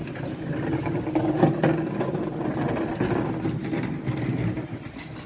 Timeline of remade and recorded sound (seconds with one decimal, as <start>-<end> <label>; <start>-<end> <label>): 0.0-5.3 recorded